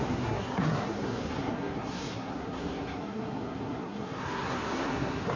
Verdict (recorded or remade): remade